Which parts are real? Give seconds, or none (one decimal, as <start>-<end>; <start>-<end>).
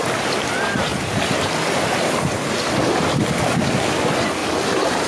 0.0-4.4